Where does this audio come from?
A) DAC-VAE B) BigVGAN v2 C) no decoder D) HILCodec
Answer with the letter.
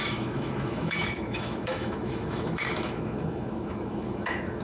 A